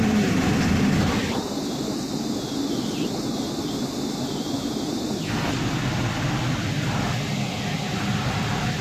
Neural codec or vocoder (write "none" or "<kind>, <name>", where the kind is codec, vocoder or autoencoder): none